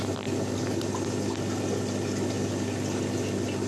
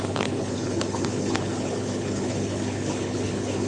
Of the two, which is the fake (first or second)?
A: second